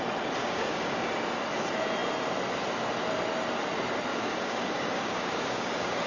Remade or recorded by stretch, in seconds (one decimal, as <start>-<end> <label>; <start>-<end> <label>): 0.0-0.4 recorded; 0.4-1.1 remade; 1.1-4.1 recorded; 4.1-6.1 remade